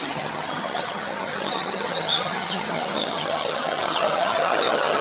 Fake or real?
fake